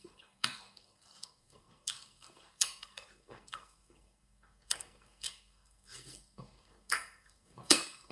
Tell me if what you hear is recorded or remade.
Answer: remade